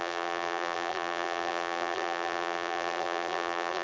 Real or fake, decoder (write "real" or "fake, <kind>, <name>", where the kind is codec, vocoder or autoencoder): fake, vocoder, BigVGAN v2